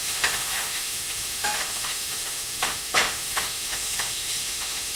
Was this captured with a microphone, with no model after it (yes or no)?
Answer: no